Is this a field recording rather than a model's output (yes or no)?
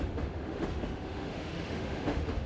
no